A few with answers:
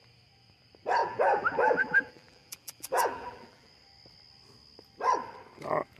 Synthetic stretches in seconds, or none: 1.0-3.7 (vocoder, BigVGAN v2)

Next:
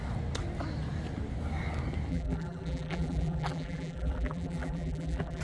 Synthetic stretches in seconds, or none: 2.1-5.4 (vocoder, BigVGAN v2)

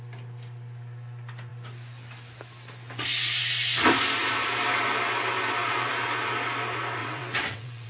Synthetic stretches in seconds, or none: 7.0-7.9 (vocoder, WaveNeXt)

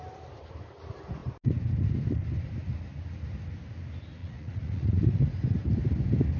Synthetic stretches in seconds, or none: 4.2-5.2 (vocoder, Vocos)

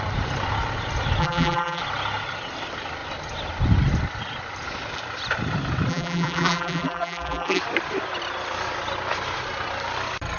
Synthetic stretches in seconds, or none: 1.2-1.8 (vocoder, BigVGAN v2); 5.9-7.6

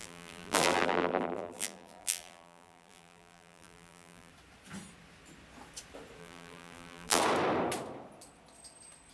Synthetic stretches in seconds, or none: 0.0-4.3 (vocoder, BigVGAN v2); 6.2-7.2

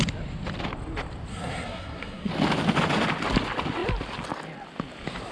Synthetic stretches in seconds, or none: 1.3-2.3 (codec, SNAC)

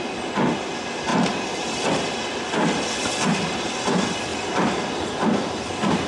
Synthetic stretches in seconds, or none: none